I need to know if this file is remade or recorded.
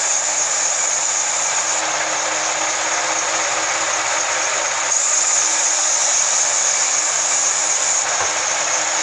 recorded